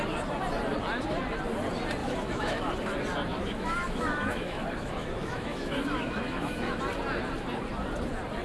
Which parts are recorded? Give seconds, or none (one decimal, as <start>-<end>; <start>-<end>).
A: 0.0-2.0; 2.7-3.3; 6.8-8.4